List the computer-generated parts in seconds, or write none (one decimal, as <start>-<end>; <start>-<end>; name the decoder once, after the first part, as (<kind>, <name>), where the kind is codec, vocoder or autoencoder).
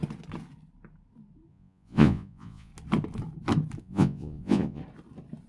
1.5-2.7 (vocoder, Vocos); 3.8-4.8